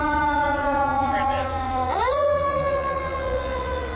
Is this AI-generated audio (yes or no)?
yes